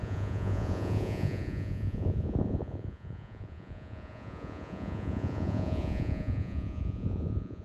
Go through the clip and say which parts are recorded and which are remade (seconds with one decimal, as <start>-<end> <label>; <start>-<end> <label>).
0.0-7.6 remade